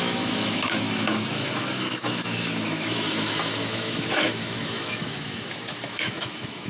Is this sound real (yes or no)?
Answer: no